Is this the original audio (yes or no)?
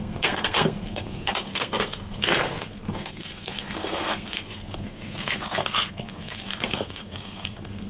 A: no